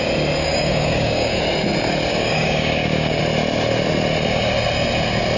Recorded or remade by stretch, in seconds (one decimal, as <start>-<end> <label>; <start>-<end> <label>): 0.0-0.4 recorded; 0.4-1.4 remade; 1.4-2.1 recorded; 2.1-3.2 remade; 3.2-5.4 recorded